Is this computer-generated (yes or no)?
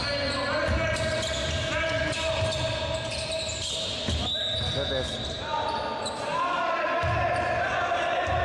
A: no